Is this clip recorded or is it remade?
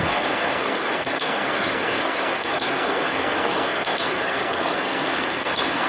remade